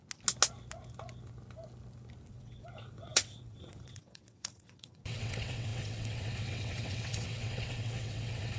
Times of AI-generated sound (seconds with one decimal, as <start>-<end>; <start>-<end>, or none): 2.3-8.6